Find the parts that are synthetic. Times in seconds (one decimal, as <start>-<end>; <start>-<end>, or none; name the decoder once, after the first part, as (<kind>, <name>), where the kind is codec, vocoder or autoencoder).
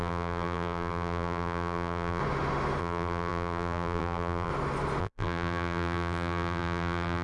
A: 0.0-2.2 (vocoder, BigVGAN v2); 2.8-4.5; 5.0-7.2